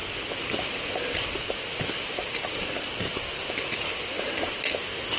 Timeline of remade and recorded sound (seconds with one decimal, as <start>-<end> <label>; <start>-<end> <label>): 0.0-5.2 recorded